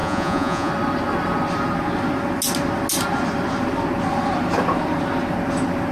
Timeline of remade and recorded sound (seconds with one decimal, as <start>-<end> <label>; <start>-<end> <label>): 0.0-0.7 remade; 0.7-5.9 recorded